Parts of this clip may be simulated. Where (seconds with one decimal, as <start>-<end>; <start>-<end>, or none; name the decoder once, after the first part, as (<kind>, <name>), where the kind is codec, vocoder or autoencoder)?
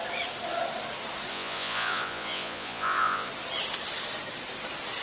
1.3-3.3 (vocoder, Vocos)